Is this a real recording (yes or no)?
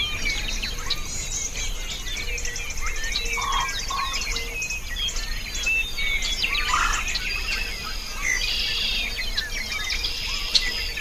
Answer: yes